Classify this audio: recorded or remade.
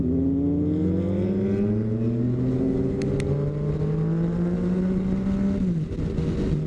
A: recorded